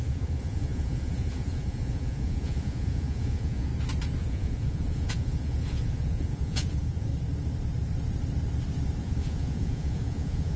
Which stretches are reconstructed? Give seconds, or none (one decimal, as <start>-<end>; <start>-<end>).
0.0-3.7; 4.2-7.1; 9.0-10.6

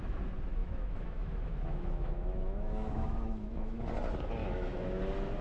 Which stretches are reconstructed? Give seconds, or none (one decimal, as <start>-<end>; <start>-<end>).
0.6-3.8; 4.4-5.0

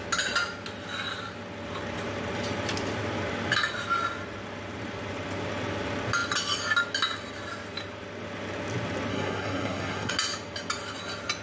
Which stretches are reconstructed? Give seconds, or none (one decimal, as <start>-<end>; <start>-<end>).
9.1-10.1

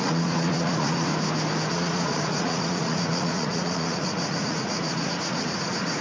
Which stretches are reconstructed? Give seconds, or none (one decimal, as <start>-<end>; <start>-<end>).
0.0-1.1; 1.7-6.0